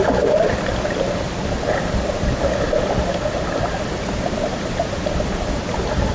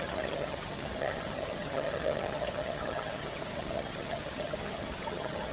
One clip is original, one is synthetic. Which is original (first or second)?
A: first